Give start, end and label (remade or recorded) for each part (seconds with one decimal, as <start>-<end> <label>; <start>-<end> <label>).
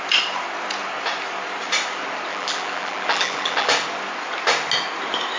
0.0-2.3 recorded; 2.3-3.7 remade; 3.7-5.4 recorded